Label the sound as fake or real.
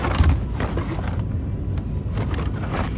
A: real